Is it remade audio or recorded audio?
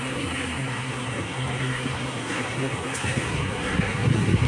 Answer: remade